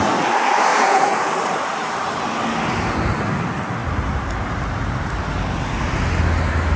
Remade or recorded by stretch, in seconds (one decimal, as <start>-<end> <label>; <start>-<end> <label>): 0.0-0.7 recorded; 0.7-1.3 remade; 1.3-6.8 recorded